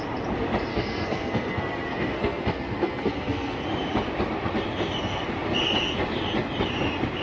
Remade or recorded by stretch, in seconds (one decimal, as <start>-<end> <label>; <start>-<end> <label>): 0.0-0.7 recorded; 0.7-3.6 remade; 3.6-7.2 recorded